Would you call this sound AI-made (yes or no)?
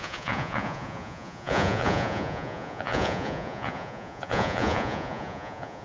yes